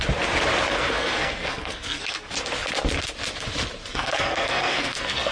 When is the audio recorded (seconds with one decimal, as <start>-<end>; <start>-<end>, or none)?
0.0-0.7; 2.3-3.9